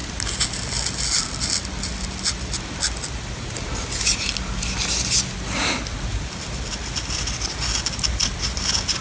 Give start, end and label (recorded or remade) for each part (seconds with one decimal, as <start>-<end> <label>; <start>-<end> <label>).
0.0-9.0 recorded

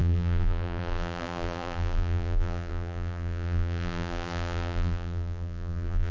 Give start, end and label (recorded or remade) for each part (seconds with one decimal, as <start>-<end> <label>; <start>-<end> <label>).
0.0-6.1 remade